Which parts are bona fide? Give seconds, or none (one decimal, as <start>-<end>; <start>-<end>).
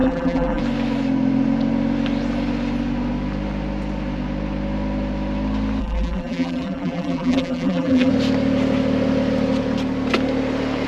0.6-5.8; 8.1-10.9